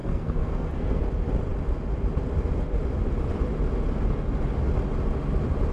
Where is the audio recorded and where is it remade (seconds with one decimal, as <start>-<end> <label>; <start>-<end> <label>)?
0.0-1.0 remade; 1.0-5.7 recorded

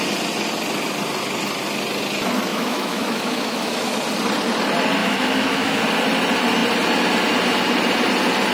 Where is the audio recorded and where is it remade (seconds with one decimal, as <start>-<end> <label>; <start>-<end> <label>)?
0.0-2.5 recorded; 2.5-4.0 remade; 4.0-5.0 recorded; 5.0-5.8 remade; 5.8-8.5 recorded

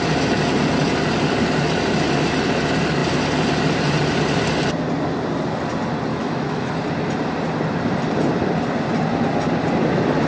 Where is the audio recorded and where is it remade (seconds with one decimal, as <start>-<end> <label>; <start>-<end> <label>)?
0.0-6.1 recorded; 6.1-6.7 remade; 6.7-10.3 recorded

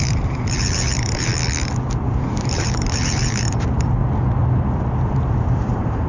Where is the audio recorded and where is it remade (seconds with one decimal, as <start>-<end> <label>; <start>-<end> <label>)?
0.0-1.3 remade; 1.3-2.1 recorded; 2.1-4.0 remade; 4.0-5.0 recorded; 5.0-6.1 remade

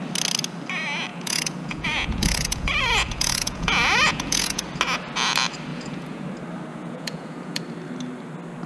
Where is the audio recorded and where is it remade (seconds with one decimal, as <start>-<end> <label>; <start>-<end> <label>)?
0.0-1.1 recorded; 1.1-4.6 remade; 4.6-5.7 recorded; 5.7-6.2 remade; 6.2-6.7 recorded; 6.7-7.6 remade; 7.6-8.7 recorded